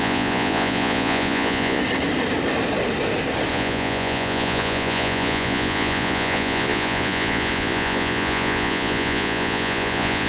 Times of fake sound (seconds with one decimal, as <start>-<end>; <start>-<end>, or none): 0.0-1.8; 3.5-10.3

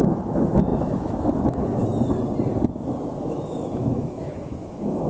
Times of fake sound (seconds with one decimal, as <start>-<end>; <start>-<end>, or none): 0.0-1.8; 3.2-5.1

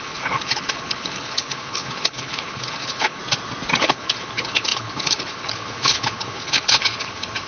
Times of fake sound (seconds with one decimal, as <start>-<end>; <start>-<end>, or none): 0.0-3.2; 3.8-7.5

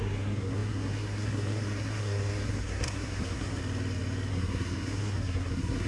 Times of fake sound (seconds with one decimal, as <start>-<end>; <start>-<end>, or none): 0.0-3.6; 4.3-5.9

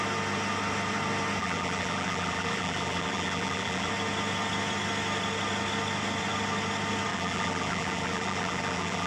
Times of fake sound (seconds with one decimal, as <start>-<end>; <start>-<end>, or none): 1.4-3.9; 7.1-9.1

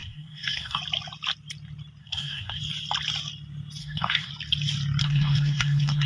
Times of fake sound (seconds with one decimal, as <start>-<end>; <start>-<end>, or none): 0.0-0.8; 2.0-2.6; 3.8-4.3; 5.0-6.1